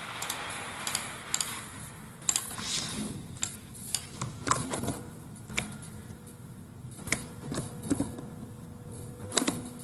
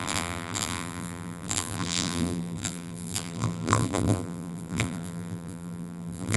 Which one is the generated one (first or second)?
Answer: second